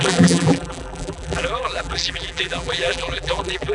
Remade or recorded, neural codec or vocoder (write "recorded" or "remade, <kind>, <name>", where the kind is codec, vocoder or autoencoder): remade, vocoder, BigVGAN v2